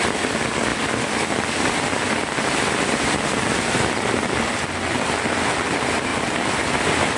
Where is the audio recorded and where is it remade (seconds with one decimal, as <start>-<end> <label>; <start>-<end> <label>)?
0.0-7.2 recorded